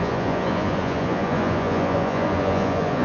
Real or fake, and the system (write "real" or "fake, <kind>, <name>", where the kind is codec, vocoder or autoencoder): fake, vocoder, Vocos